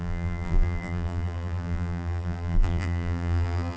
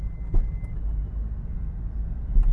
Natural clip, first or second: second